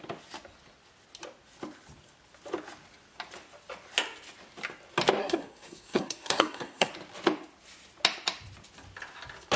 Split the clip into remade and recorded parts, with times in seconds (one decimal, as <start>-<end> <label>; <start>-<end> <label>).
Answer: 0.0-5.2 recorded; 5.2-6.9 remade; 6.9-9.6 recorded